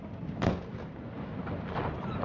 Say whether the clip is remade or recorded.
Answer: recorded